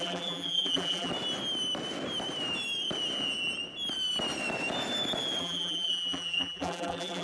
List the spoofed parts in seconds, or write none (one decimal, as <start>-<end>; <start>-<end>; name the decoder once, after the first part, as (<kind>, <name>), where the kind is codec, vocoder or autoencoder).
0.0-1.1 (vocoder, BigVGAN v2); 5.4-7.2